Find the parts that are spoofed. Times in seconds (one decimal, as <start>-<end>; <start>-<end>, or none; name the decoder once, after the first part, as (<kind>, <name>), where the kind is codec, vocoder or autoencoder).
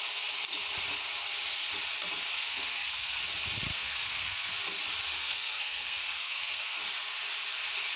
2.3-3.2 (codec, SNAC); 3.7-4.5; 5.2-6.8